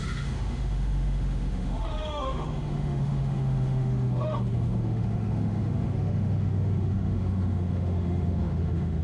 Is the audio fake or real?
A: fake